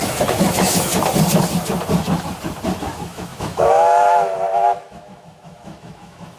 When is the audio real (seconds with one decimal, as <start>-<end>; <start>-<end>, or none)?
0.9-2.8